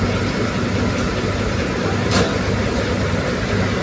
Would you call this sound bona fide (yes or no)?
yes